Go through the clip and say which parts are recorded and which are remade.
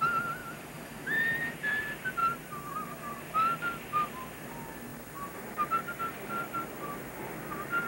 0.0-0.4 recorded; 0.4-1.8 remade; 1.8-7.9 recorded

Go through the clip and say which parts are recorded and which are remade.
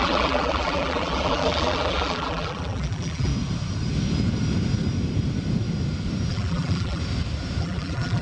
0.0-3.3 remade; 3.3-6.3 recorded; 6.3-7.0 remade; 7.0-7.6 recorded; 7.6-8.2 remade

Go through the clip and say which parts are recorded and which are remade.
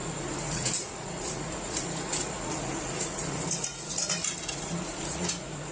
0.0-5.7 remade